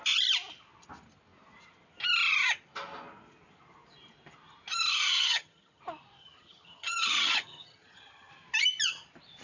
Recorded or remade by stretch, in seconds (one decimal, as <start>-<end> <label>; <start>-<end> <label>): 0.0-4.9 recorded; 4.9-5.8 remade; 5.8-6.2 recorded; 6.2-8.3 remade; 8.3-9.4 recorded